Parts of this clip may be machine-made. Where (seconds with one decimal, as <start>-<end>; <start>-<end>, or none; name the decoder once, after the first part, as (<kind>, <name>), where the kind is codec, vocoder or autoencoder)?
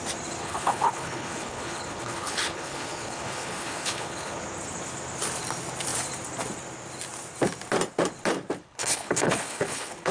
0.4-4.4 (codec, HILCodec); 8.6-10.1